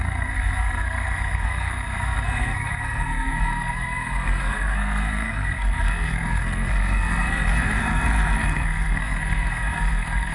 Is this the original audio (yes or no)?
no